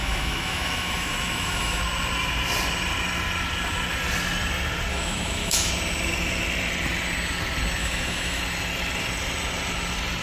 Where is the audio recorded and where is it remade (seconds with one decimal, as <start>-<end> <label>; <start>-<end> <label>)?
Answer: 0.0-1.8 remade; 1.8-4.9 recorded; 4.9-5.7 remade; 5.7-7.8 recorded; 7.8-8.4 remade; 8.4-10.2 recorded